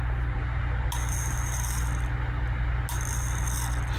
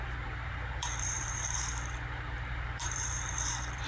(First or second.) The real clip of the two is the first